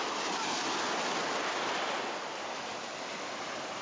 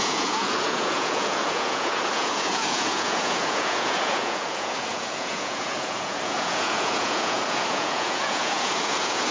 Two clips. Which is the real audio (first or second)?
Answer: first